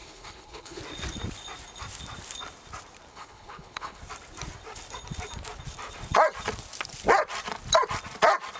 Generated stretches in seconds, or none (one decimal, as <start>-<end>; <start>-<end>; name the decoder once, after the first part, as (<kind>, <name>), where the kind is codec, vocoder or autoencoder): 0.0-0.8 (codec, HILCodec); 3.1-4.0